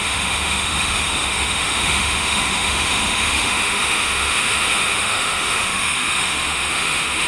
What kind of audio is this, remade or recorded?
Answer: remade